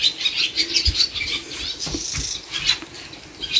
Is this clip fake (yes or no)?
no